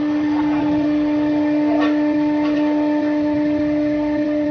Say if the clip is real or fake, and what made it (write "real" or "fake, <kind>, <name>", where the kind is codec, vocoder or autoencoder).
real